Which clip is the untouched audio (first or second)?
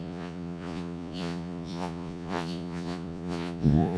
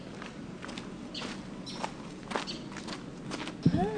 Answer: second